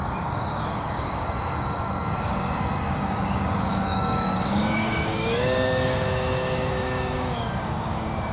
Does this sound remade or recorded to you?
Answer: remade